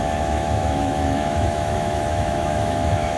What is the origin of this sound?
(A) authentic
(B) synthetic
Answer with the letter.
B